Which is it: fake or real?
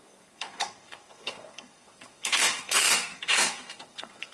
fake